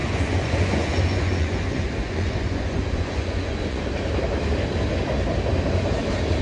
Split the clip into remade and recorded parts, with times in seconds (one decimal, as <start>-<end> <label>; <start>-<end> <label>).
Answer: 0.0-3.8 remade; 3.8-6.4 recorded

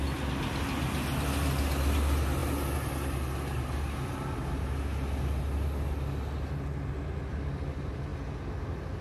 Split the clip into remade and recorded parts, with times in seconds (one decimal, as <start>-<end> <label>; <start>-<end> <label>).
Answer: 0.0-9.0 recorded